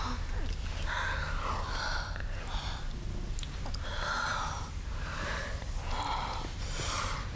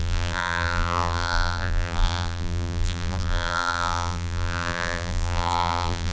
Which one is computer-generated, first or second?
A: second